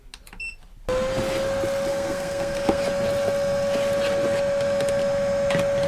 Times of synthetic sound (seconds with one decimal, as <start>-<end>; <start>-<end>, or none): 1.9-2.8